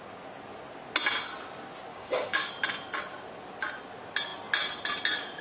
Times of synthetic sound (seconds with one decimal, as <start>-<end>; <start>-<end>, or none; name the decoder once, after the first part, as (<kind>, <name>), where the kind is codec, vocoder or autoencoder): 1.9-2.5 (codec, DAC)